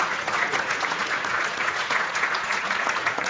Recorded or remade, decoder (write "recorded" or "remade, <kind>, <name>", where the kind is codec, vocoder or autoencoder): remade, vocoder, Vocos